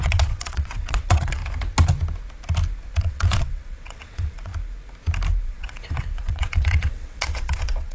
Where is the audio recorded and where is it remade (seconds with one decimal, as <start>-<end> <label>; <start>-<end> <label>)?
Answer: 0.0-1.4 remade; 1.4-3.0 recorded; 3.0-4.5 remade; 4.5-5.4 recorded; 5.4-7.9 remade